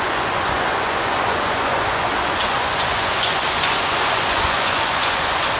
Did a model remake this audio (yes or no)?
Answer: yes